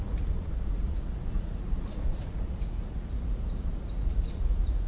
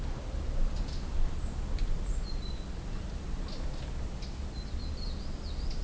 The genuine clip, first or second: second